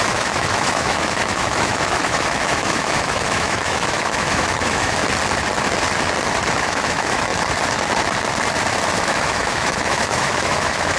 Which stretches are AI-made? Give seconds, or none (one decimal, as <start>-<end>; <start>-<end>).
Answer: 0.0-5.0; 6.6-7.3; 9.0-11.0